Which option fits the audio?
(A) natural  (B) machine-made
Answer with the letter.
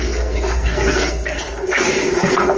B